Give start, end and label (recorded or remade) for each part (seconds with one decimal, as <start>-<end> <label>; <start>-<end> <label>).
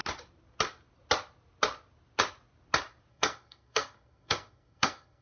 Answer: 0.0-3.1 recorded; 3.1-5.2 remade